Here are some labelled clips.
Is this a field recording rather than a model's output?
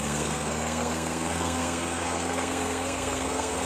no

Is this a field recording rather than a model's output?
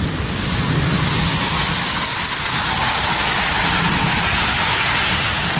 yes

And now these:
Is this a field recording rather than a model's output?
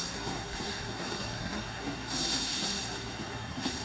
no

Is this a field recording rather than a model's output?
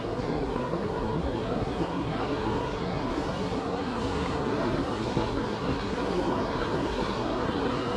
no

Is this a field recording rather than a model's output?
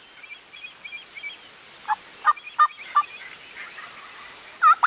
yes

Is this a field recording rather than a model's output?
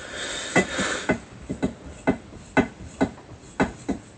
yes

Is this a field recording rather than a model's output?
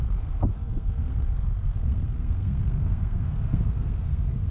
no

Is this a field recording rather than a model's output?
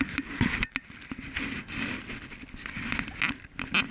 yes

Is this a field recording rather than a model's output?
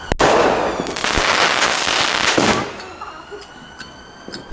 yes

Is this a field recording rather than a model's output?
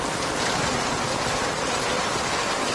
yes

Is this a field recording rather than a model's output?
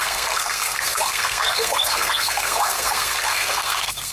no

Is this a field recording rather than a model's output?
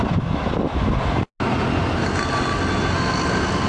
yes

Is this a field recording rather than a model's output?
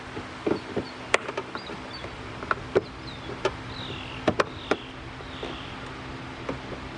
yes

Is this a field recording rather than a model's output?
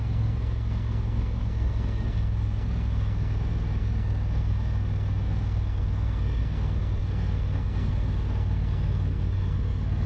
no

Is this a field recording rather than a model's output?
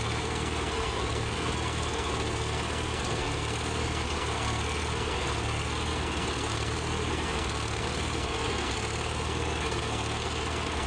no